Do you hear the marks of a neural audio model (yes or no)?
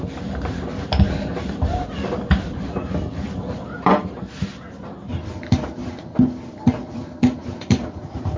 yes